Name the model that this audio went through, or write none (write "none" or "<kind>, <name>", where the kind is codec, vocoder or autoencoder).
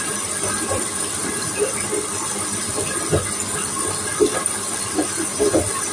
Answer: none